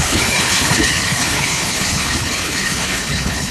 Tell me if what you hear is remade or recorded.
remade